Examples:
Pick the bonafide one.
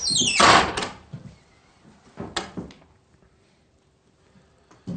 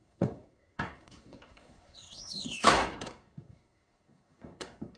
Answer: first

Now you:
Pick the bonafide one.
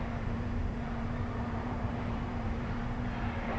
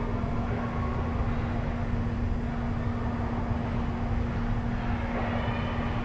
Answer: second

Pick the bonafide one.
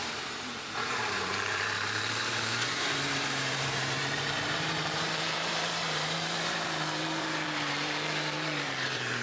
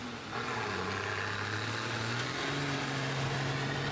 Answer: second